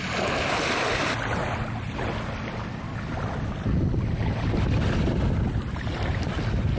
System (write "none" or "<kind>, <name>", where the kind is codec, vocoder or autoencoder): none